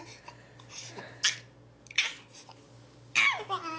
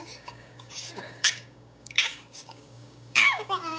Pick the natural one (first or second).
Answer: first